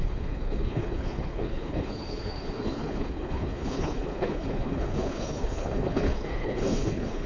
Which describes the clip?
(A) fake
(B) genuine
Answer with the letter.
A